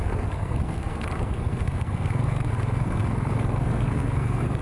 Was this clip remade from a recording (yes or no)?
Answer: yes